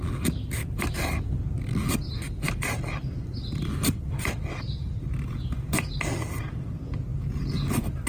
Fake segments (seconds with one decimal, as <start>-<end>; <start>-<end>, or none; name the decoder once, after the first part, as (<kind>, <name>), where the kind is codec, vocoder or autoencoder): 0.6-1.3 (vocoder, BigVGAN v2); 7.1-8.1